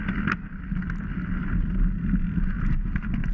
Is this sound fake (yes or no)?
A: no